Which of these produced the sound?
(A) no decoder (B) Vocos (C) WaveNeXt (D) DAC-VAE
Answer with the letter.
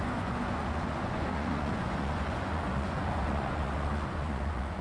B